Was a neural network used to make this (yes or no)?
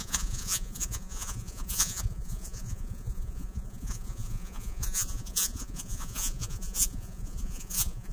yes